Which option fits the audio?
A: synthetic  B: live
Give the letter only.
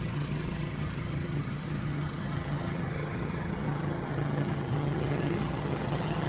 A